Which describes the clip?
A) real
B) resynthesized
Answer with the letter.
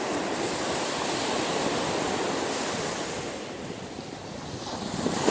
A